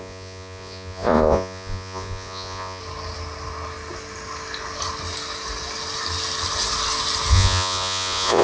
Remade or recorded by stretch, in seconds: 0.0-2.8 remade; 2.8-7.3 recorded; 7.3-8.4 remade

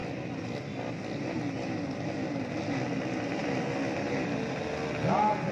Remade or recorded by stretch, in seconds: 0.0-5.5 recorded

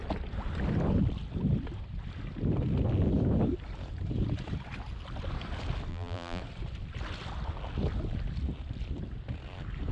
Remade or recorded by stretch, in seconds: 0.0-5.9 recorded; 5.9-6.4 remade; 6.4-9.9 recorded

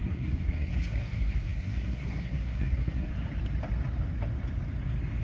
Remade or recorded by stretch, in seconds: 0.0-3.1 remade; 3.1-5.2 recorded